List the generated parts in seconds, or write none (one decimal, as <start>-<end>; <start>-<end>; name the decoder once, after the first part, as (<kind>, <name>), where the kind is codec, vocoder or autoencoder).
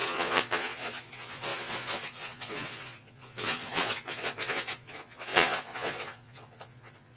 0.0-7.2 (vocoder, Vocos)